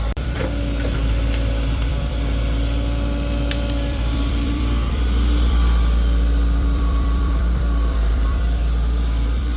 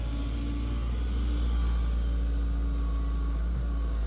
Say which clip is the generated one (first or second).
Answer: first